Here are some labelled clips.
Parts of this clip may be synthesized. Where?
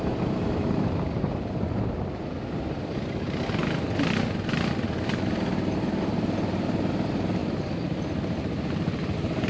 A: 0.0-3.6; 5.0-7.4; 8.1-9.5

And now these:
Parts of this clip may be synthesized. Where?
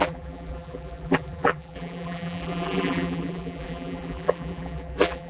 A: 0.0-5.3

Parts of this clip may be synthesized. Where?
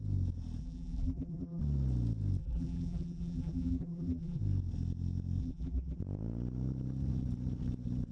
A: 0.6-1.6; 2.4-4.4; 5.4-6.0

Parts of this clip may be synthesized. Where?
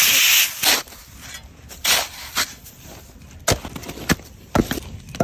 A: none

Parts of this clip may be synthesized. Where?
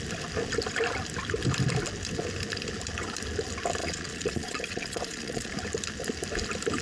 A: 3.8-5.5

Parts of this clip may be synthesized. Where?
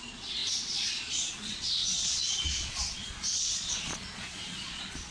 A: 0.0-5.1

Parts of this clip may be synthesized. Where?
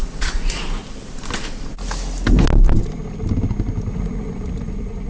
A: 0.0-0.8; 3.9-5.1